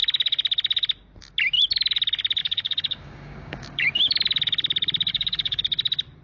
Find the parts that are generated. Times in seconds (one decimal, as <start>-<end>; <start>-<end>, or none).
2.4-4.1; 5.1-5.6